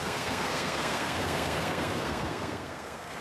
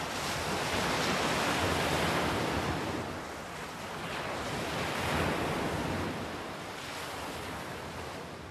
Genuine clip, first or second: second